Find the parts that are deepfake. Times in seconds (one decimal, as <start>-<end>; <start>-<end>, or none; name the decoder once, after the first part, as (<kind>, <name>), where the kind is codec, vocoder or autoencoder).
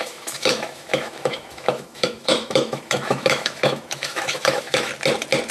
0.0-4.9 (autoencoder, DAC-VAE)